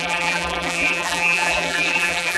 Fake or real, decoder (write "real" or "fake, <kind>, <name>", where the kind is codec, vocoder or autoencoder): fake, vocoder, BigVGAN v2